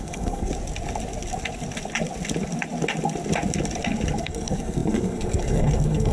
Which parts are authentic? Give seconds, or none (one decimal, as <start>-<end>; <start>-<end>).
0.5-4.2